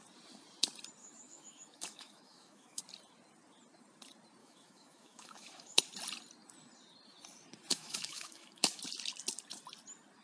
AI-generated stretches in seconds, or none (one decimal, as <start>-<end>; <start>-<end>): 1.0-2.8; 4.4-5.8; 7.7-8.8